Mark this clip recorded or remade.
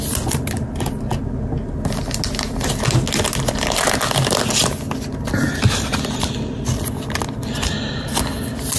recorded